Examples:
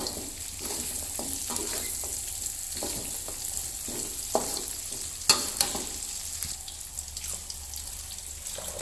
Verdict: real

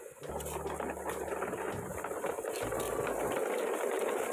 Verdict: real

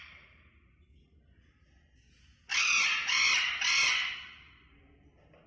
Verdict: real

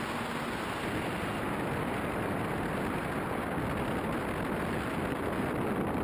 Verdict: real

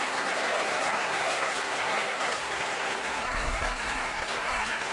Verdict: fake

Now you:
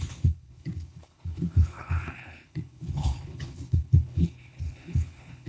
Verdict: fake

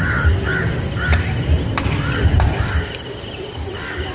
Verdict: real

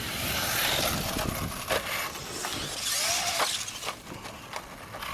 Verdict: real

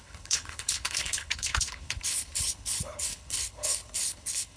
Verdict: fake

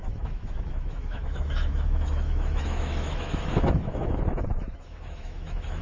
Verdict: fake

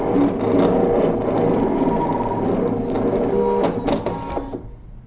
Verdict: real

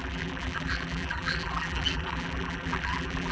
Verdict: fake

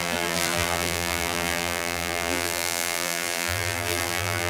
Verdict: fake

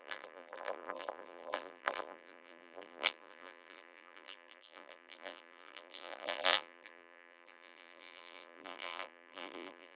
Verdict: fake